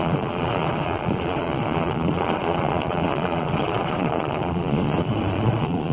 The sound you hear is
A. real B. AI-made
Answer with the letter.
B